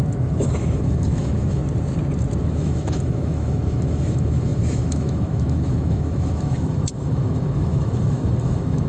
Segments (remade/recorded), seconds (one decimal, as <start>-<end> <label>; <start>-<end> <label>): 0.0-1.6 remade; 1.6-2.4 recorded; 2.4-8.9 remade